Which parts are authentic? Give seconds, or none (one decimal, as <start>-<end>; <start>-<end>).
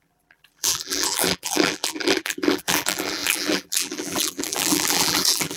none